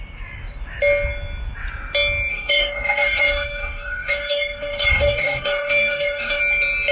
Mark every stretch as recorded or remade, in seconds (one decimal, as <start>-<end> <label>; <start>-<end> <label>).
0.0-2.3 recorded; 2.3-6.4 remade; 6.4-6.9 recorded